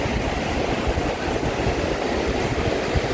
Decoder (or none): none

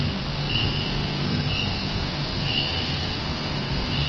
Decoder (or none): codec, SNAC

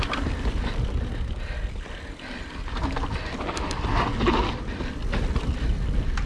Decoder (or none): none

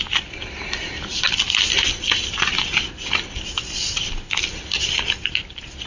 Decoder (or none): none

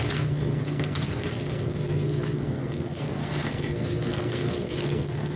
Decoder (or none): codec, SNAC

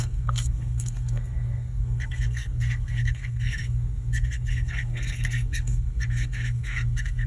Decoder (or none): codec, SNAC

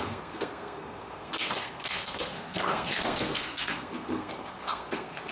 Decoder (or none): codec, SNAC